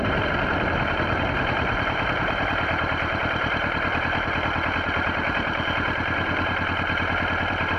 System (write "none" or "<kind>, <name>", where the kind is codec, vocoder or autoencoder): vocoder, BigVGAN v2